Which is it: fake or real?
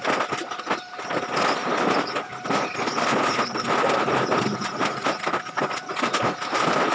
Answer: real